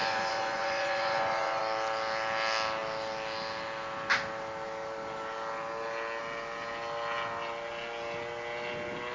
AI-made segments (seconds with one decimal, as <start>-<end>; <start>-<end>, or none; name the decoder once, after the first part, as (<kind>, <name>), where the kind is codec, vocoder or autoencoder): 0.0-1.6 (vocoder, Vocos)